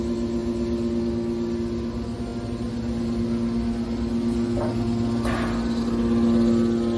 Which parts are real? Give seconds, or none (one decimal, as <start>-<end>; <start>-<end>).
0.0-7.0